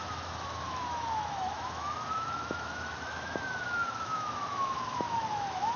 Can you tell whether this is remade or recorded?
remade